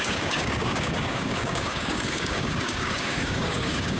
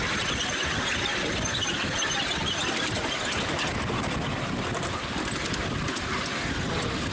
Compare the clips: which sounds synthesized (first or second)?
first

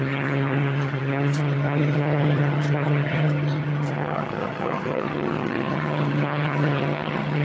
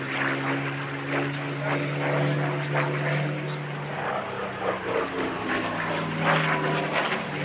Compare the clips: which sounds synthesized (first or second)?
first